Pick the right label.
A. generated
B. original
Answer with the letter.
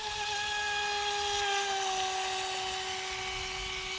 B